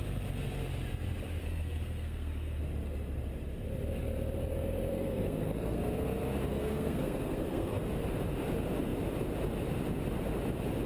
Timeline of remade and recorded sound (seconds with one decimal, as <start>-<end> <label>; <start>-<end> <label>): 0.0-1.4 recorded; 1.4-2.6 remade; 2.6-4.9 recorded; 4.9-5.8 remade; 5.8-6.5 recorded; 6.5-7.8 remade; 7.8-10.9 recorded